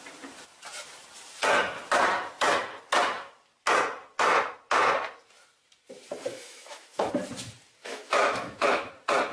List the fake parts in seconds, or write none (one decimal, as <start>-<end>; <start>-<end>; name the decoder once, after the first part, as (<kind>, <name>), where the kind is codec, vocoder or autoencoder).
6.3-7.1 (autoencoder, DAC-VAE); 7.8-8.9